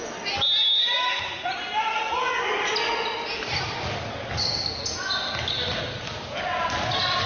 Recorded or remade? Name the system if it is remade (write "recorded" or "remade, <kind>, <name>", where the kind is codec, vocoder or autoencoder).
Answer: recorded